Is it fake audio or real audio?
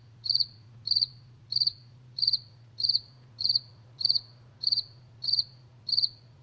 fake